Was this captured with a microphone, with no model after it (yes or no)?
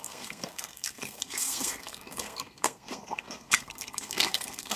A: no